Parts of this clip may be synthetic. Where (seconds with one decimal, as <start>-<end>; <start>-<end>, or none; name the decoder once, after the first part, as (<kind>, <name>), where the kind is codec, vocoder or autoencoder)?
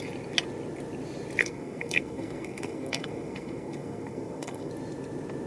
1.4-4.7 (codec, SNAC)